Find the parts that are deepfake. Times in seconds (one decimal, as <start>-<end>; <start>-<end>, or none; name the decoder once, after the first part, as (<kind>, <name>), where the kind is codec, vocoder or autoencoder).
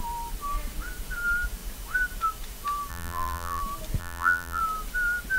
2.9-3.6 (vocoder, BigVGAN v2); 4.0-4.6